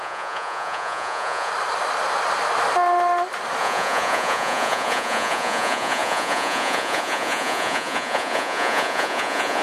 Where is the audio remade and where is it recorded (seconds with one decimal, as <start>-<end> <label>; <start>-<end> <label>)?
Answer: 0.0-1.5 remade; 1.5-3.6 recorded; 3.6-9.6 remade